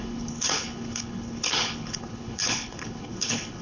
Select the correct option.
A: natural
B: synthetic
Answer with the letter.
B